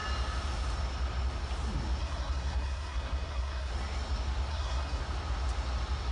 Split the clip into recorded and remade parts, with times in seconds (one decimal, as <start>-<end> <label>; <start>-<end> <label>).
0.0-2.0 recorded; 2.0-3.7 remade; 3.7-4.5 recorded; 4.5-5.0 remade; 5.0-6.1 recorded